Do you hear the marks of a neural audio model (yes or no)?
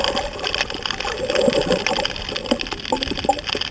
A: no